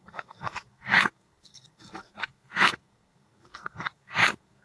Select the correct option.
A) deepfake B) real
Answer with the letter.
A